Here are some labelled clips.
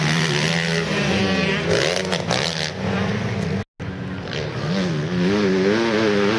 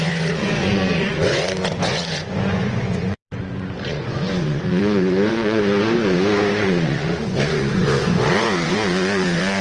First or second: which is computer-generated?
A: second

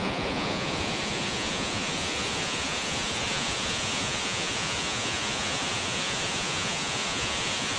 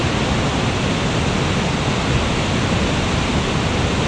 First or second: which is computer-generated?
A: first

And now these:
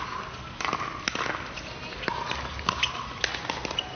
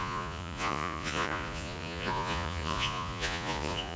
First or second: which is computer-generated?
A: second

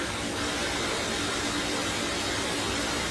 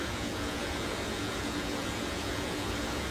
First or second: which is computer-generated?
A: second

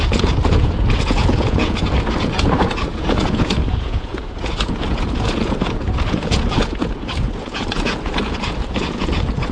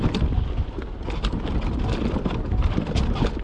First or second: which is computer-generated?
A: first